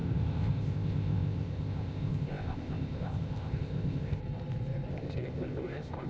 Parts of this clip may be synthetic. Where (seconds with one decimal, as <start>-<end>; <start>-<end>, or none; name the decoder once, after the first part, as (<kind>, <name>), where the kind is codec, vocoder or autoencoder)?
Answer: 0.0-4.2 (codec, ZipCodec); 4.9-6.1